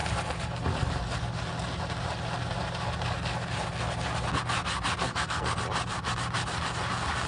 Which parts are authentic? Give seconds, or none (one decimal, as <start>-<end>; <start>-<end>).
0.0-5.0; 5.6-7.3